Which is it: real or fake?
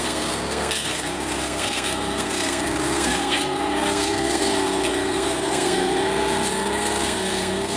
fake